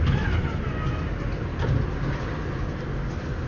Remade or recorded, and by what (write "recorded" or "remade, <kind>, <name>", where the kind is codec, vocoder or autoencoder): recorded